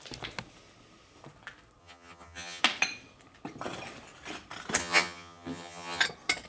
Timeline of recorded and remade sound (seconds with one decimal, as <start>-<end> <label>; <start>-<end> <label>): 0.0-1.8 recorded; 1.8-2.6 remade; 2.6-4.8 recorded; 4.8-6.0 remade; 6.0-6.5 recorded